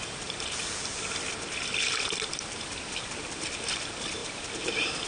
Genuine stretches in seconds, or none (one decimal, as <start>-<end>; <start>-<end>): 0.0-5.1